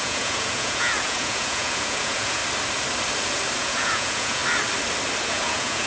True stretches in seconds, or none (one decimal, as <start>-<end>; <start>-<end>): 2.4-3.6; 4.4-5.2